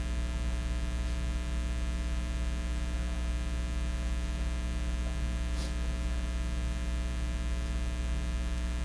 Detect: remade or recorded recorded